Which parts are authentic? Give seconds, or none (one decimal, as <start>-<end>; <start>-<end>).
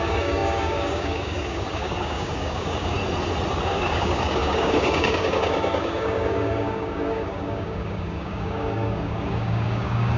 3.0-3.6